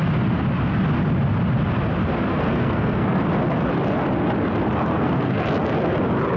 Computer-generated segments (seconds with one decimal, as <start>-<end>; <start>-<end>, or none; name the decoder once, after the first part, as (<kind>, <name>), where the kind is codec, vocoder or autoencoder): 2.3-3.2 (codec, SNAC); 4.9-5.4